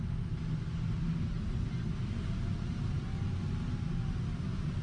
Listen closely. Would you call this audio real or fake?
real